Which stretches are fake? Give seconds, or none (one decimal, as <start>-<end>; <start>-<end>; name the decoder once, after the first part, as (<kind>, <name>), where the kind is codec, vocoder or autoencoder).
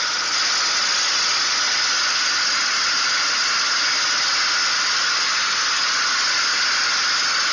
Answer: none